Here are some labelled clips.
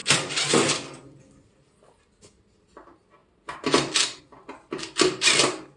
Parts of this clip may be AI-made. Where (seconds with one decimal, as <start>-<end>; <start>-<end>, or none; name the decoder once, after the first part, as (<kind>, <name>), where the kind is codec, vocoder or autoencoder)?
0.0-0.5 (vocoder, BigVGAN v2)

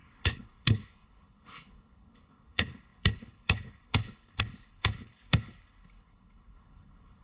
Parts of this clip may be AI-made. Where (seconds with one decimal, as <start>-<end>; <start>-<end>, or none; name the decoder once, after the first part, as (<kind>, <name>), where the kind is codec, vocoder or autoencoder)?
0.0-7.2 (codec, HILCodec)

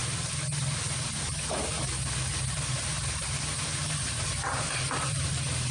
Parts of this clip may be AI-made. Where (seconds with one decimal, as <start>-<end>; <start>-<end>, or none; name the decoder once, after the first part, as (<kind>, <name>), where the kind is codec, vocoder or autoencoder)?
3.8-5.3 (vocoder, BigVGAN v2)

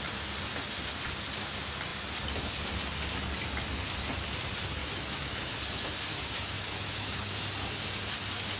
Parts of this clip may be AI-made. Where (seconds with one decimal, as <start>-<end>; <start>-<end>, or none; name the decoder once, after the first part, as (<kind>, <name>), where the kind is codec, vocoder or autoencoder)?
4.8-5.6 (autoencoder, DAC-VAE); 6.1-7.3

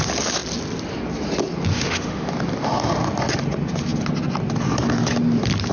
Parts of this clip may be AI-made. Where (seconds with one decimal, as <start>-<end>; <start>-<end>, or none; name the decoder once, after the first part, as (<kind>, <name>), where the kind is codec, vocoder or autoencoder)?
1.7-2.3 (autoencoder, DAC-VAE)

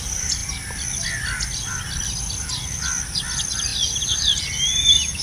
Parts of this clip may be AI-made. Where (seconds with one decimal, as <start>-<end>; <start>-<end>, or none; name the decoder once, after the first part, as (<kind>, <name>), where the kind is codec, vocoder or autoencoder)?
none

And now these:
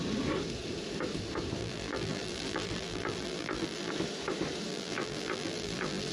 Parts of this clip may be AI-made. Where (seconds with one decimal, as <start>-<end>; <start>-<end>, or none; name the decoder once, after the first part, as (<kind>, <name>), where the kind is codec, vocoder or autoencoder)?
1.6-3.9 (vocoder, BigVGAN v2); 4.7-6.1

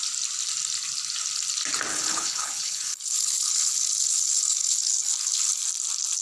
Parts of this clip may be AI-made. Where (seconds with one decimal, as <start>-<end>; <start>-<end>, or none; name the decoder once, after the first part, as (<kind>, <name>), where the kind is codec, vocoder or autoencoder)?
1.9-5.6 (codec, HILCodec)